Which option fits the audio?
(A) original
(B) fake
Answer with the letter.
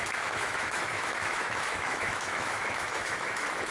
B